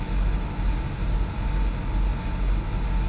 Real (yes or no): yes